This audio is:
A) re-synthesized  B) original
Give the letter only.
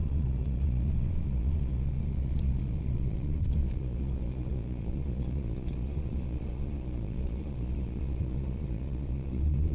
A